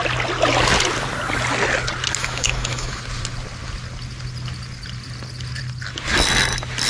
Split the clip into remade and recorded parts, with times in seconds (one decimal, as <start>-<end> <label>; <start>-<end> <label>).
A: 0.0-2.2 recorded; 2.2-3.0 remade; 3.0-6.9 recorded